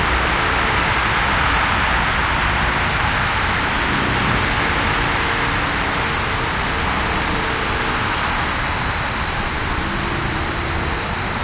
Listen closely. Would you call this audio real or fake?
real